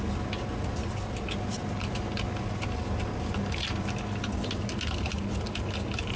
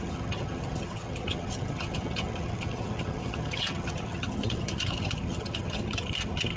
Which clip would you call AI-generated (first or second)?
second